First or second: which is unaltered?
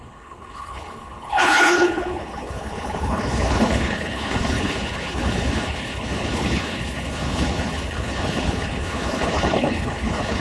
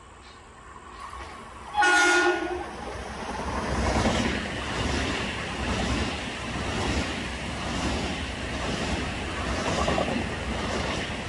second